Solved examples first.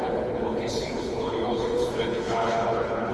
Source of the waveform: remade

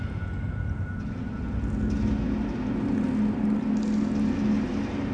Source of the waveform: recorded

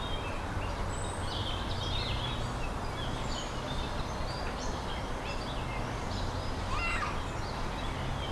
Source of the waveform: recorded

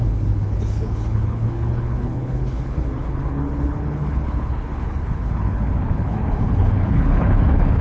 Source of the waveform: remade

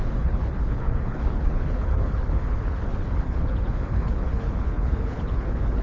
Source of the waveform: remade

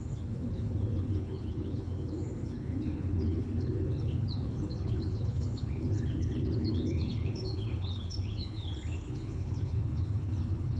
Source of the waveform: remade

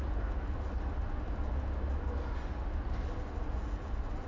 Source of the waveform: recorded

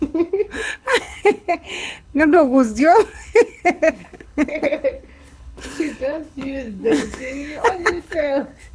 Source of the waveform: remade